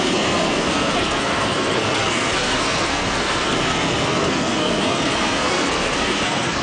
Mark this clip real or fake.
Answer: fake